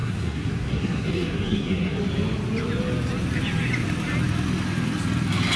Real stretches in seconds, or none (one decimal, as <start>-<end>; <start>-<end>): 2.0-5.6